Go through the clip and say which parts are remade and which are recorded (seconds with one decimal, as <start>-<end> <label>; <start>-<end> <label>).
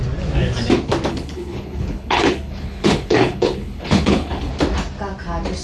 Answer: 0.0-1.1 recorded; 1.1-4.5 remade; 4.5-5.6 recorded